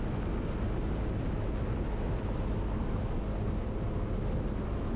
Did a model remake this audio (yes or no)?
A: no